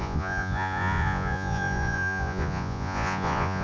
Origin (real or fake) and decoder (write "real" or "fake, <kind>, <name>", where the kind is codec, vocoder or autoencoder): fake, vocoder, Vocos